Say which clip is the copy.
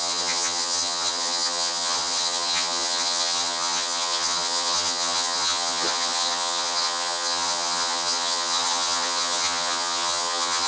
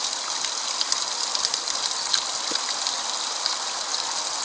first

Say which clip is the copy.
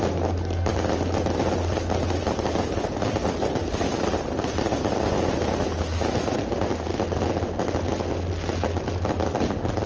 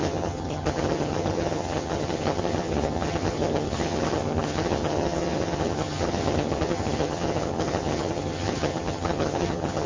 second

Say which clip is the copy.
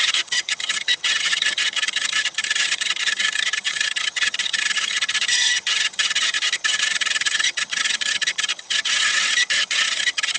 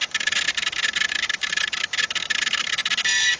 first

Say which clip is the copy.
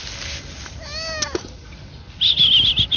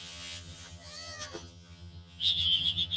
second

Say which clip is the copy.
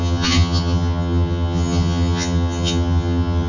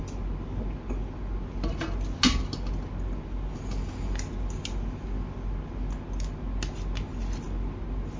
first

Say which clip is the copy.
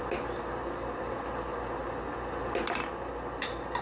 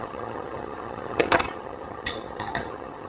second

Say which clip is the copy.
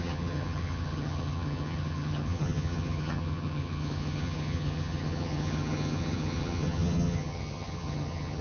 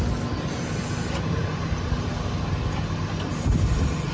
first